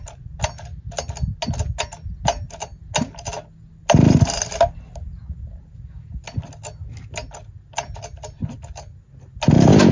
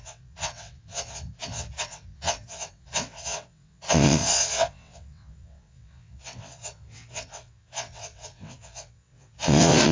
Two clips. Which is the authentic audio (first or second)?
first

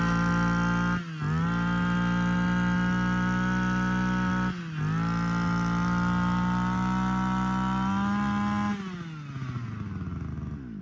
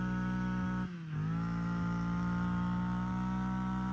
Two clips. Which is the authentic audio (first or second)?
first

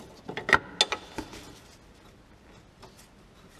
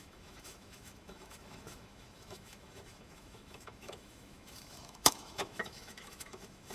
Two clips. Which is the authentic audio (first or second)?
first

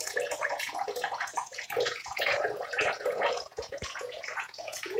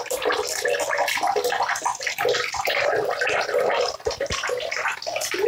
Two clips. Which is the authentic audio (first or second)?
second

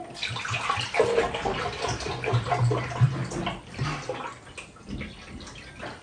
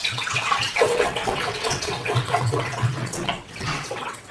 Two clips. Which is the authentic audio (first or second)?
first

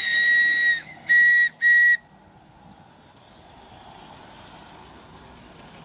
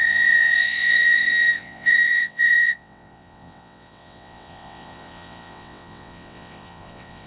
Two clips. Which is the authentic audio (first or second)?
first